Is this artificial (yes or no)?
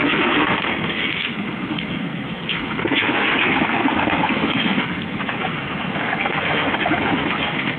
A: yes